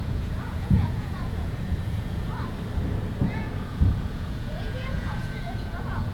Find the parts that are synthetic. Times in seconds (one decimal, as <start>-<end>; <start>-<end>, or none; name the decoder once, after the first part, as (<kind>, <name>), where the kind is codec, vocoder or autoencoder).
0.0-2.3 (vocoder, Vocos); 3.2-6.1